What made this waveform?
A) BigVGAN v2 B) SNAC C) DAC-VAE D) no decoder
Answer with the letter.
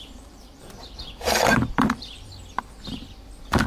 A